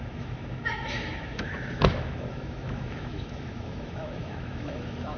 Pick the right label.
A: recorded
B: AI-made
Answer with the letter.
B